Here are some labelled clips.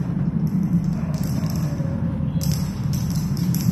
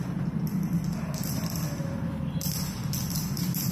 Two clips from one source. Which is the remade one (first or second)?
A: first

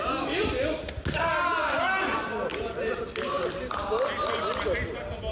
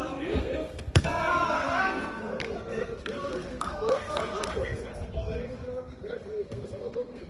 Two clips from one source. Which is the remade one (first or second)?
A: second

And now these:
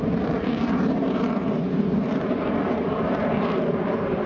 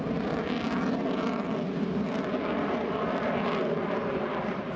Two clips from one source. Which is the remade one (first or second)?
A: first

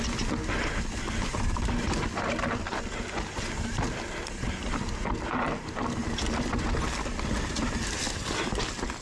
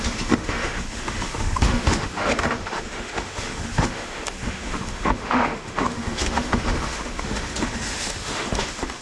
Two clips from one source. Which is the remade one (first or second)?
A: second